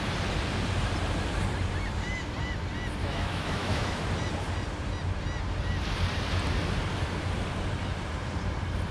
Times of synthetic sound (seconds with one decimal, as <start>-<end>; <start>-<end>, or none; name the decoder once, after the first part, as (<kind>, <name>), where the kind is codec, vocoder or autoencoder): 3.0-4.0 (autoencoder, DAC-VAE)